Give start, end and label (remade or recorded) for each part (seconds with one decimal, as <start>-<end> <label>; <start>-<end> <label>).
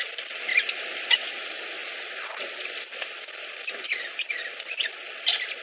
0.0-5.6 recorded